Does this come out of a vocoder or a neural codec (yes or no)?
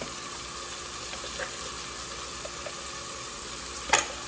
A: no